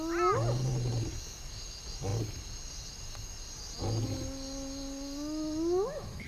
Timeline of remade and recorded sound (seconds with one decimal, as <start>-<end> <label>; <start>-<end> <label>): 0.0-6.3 recorded